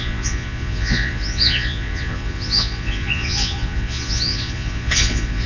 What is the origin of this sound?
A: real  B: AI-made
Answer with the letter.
B